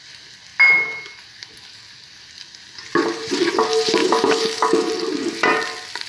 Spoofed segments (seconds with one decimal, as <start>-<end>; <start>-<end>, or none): 4.0-4.9